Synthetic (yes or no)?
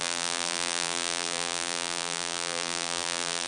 yes